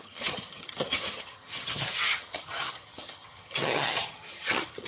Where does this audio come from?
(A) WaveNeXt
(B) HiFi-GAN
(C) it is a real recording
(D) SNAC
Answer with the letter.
B